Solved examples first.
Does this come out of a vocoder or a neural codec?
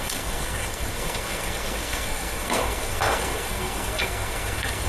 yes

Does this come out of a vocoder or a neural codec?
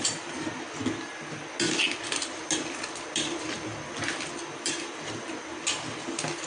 no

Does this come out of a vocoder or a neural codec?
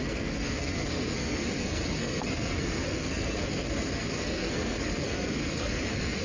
yes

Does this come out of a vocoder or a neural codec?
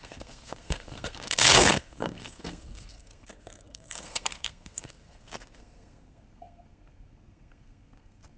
yes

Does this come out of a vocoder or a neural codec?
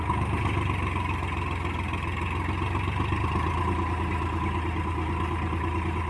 no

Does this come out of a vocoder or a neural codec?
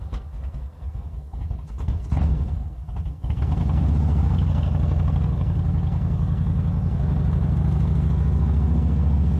yes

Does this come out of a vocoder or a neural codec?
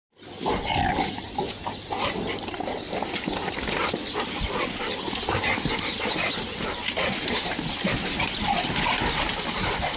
no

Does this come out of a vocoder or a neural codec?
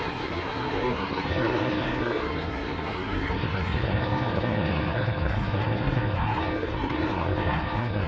yes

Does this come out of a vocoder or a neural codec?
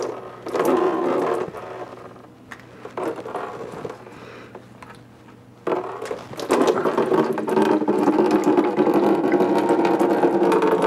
no